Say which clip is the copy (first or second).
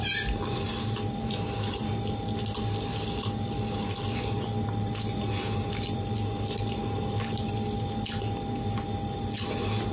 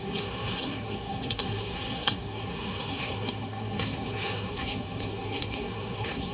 second